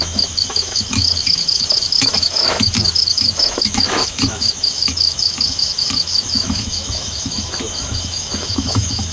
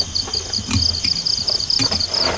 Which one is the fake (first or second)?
first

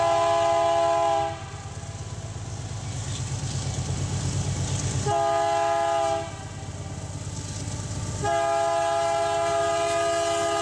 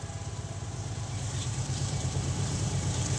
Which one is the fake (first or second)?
second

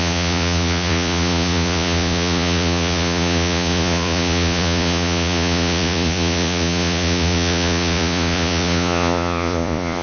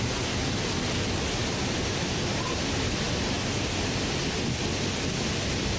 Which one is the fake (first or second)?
first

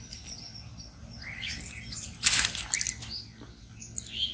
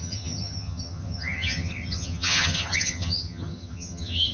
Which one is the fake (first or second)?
second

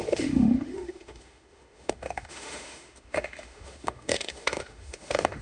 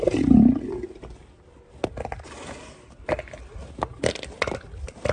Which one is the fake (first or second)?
first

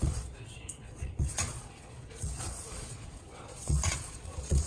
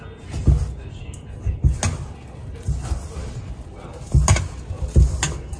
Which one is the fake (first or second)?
first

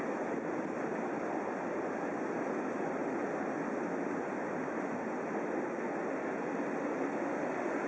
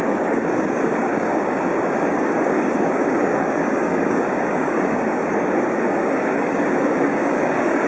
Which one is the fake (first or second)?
second